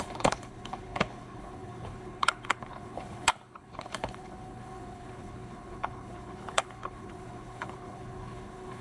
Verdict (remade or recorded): remade